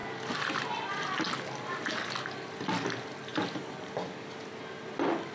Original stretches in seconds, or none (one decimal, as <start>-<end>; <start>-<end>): 0.0-3.3; 3.9-5.3